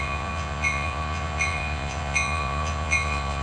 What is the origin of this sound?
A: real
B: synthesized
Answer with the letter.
B